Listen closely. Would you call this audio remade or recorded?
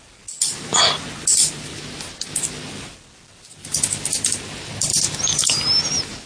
recorded